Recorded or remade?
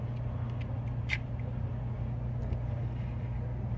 recorded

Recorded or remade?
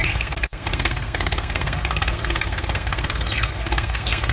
remade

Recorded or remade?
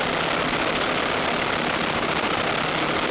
recorded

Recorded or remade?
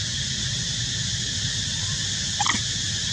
recorded